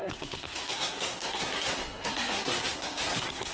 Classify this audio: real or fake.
fake